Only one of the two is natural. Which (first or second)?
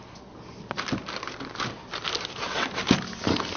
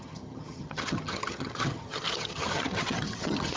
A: first